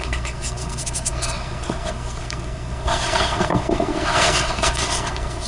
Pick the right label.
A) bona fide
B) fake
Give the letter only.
B